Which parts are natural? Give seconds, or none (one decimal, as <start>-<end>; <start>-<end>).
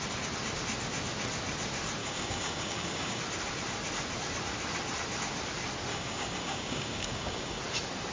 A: 0.0-2.0; 3.2-5.9; 7.6-8.1